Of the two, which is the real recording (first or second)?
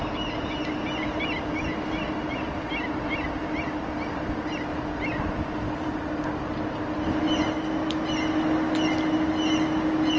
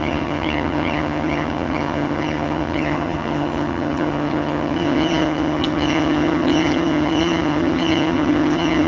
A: first